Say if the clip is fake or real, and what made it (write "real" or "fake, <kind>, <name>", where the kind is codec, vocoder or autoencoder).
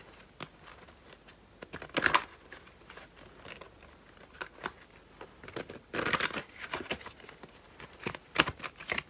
real